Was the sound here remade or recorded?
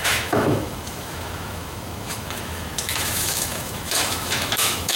remade